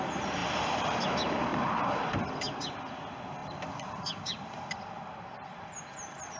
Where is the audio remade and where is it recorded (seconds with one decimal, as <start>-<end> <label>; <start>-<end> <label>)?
0.0-0.4 recorded; 0.4-1.0 remade; 1.0-1.5 recorded; 1.5-2.0 remade; 2.0-3.4 recorded; 3.4-5.2 remade; 5.2-6.4 recorded